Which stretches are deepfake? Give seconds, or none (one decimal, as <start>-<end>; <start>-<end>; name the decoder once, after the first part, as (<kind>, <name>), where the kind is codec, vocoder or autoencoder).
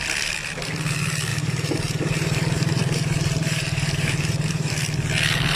1.3-4.7 (vocoder, BigVGAN v2)